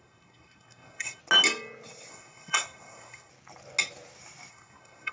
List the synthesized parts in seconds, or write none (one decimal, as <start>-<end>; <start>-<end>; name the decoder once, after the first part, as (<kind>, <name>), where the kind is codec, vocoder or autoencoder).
0.0-1.2 (codec, SNAC); 2.1-3.3; 4.5-5.1